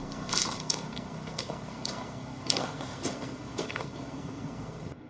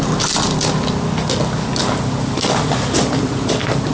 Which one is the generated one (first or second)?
first